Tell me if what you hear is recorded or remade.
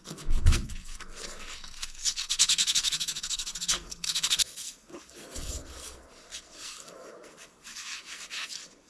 remade